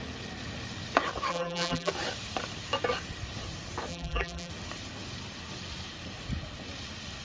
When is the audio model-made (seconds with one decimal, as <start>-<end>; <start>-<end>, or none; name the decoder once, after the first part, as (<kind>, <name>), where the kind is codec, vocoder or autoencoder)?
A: 1.3-1.9 (vocoder, BigVGAN v2); 3.9-4.5